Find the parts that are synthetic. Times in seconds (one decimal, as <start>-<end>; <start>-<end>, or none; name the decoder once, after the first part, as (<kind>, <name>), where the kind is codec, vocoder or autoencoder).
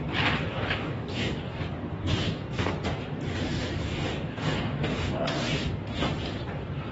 0.5-1.6 (codec, DAC); 2.0-2.7; 3.8-5.5